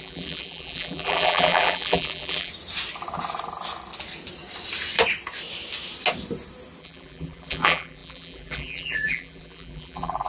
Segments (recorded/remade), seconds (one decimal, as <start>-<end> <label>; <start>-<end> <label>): 0.0-2.5 remade; 2.5-6.8 recorded; 6.8-10.3 remade